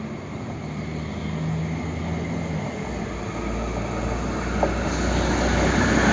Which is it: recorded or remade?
recorded